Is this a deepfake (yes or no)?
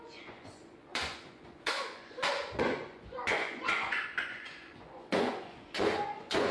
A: yes